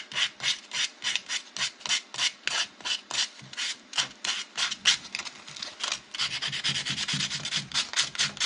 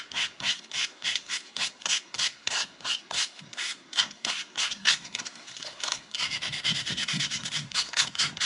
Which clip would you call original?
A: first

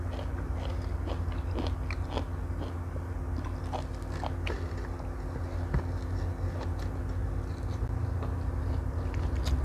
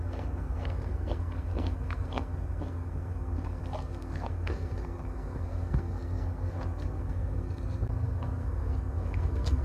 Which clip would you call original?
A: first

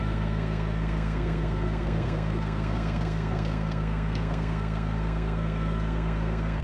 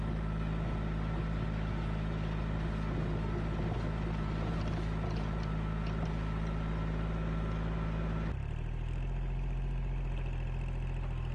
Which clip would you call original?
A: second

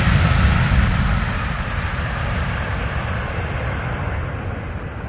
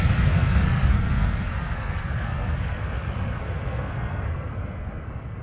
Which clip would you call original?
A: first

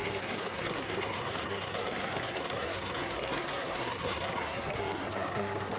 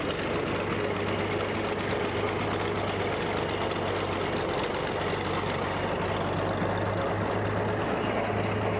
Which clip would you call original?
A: second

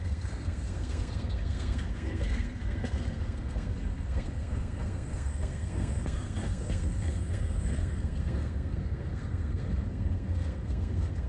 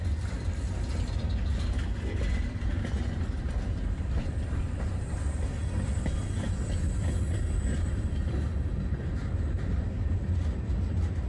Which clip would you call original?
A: second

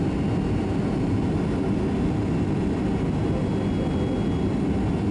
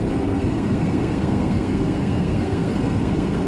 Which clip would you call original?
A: first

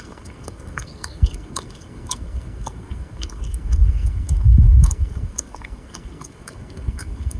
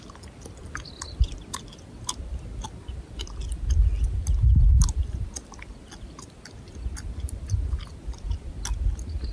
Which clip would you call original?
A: second